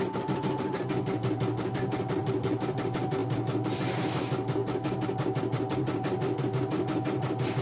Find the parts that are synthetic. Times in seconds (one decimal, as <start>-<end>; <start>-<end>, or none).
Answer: 2.2-2.8